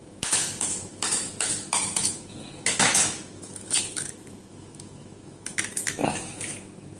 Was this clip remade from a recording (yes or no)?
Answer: yes